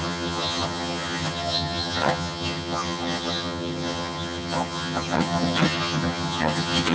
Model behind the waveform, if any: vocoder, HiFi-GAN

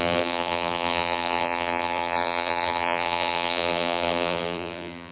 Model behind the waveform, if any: vocoder, BigVGAN v2